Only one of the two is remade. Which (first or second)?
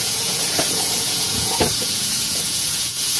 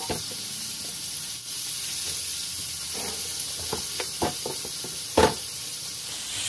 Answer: first